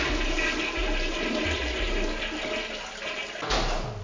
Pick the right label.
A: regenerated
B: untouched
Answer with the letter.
B